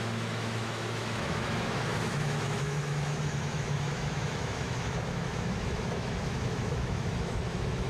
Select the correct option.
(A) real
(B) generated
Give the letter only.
B